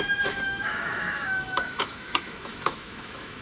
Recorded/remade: remade